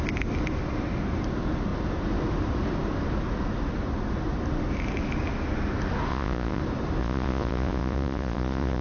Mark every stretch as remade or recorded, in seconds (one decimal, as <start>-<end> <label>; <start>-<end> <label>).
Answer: 0.0-6.1 recorded; 6.1-6.6 remade; 6.6-7.0 recorded; 7.0-8.8 remade